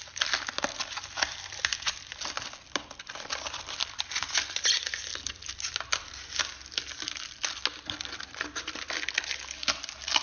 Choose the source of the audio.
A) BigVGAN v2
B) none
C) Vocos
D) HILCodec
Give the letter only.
B